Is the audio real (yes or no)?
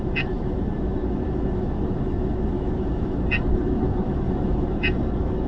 no